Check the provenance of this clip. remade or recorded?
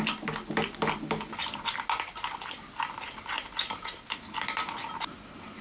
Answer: recorded